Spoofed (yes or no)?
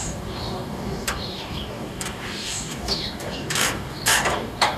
yes